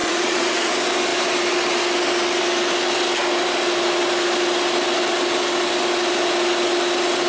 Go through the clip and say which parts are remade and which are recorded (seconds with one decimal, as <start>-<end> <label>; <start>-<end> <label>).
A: 0.0-0.7 remade; 0.7-7.3 recorded